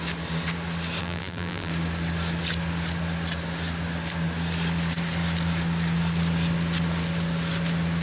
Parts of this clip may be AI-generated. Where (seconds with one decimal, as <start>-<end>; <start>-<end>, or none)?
1.0-1.7